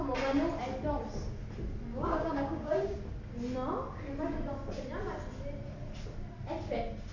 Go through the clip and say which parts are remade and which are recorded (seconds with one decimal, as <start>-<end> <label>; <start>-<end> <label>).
0.0-1.9 recorded; 1.9-3.0 remade; 3.0-7.1 recorded

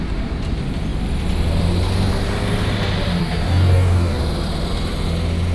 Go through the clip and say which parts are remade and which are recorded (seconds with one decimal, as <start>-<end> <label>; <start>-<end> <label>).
0.0-3.2 recorded; 3.2-4.2 remade; 4.2-5.5 recorded

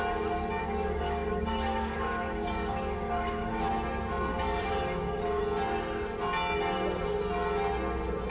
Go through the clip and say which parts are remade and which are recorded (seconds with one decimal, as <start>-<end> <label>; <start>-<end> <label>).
0.0-0.6 recorded; 0.6-3.7 remade; 3.7-4.3 recorded; 4.3-5.4 remade; 5.4-8.3 recorded

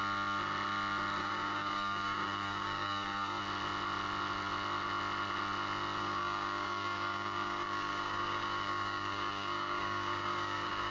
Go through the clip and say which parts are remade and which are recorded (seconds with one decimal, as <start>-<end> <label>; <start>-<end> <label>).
0.0-1.2 recorded; 1.2-3.4 remade; 3.4-6.0 recorded; 6.0-10.9 remade

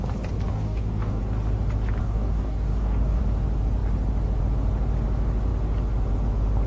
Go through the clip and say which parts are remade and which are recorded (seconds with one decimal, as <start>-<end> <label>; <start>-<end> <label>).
0.0-0.5 recorded; 0.5-1.2 remade; 1.2-2.0 recorded; 2.0-3.2 remade; 3.2-6.7 recorded